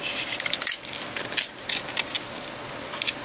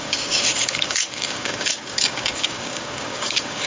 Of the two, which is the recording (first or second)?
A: first